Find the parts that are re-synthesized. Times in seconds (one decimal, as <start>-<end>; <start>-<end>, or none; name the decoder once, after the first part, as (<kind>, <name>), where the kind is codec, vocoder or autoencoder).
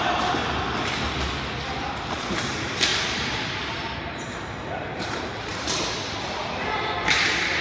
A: 0.0-0.4 (vocoder, BigVGAN v2); 2.1-5.5